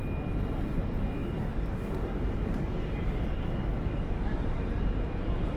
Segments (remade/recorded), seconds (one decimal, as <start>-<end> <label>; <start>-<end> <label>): 0.0-1.2 recorded; 1.2-4.6 remade; 4.6-5.6 recorded